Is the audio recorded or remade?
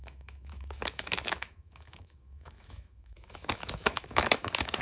remade